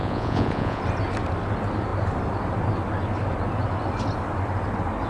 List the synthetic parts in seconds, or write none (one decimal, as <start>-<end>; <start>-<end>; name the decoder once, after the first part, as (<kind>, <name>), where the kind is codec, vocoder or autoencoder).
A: 0.0-0.8 (vocoder, Vocos)